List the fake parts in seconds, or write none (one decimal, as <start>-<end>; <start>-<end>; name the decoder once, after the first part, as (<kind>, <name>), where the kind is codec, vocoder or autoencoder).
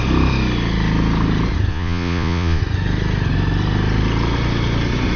1.7-2.6 (vocoder, Vocos)